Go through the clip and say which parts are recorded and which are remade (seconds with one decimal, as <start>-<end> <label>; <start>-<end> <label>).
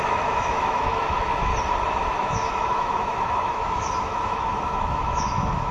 0.0-1.5 remade; 1.5-2.0 recorded; 2.0-5.7 remade